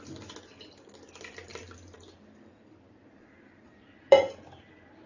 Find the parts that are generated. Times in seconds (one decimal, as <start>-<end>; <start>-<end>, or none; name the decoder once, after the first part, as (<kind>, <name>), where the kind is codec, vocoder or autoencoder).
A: 1.5-4.6 (vocoder, BigVGAN v2)